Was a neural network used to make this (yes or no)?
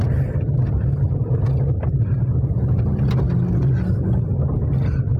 no